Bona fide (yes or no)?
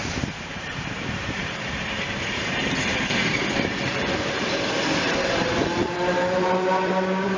no